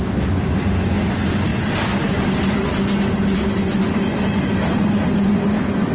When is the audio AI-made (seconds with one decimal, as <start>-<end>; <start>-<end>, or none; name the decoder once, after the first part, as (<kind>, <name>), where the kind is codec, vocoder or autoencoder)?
none